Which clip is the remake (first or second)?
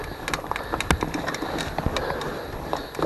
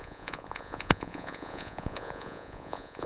second